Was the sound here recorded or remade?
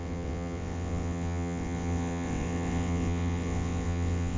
remade